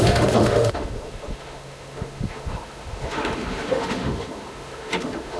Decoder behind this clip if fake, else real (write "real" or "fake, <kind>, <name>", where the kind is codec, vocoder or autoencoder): fake, autoencoder, DAC-VAE